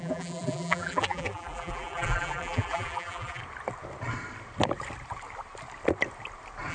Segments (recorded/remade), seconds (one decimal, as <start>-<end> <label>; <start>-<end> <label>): 0.0-3.4 remade; 3.4-6.7 recorded